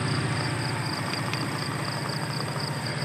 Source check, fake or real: fake